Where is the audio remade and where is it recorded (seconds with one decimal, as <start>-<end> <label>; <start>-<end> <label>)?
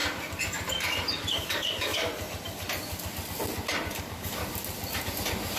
0.0-0.7 recorded; 0.7-2.1 remade; 2.1-3.9 recorded; 3.9-4.4 remade; 4.4-5.6 recorded